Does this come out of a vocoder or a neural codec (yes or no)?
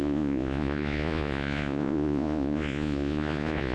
yes